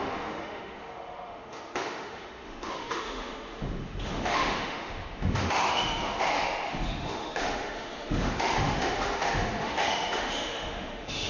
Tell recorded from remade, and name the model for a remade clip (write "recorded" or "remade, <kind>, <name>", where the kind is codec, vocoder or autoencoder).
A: remade, autoencoder, DAC-VAE